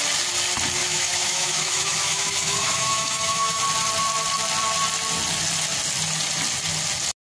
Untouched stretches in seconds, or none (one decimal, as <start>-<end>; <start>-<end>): 0.0-0.8; 3.6-7.3